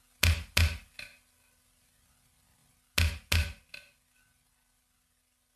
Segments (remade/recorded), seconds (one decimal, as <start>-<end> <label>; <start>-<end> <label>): 0.0-5.6 recorded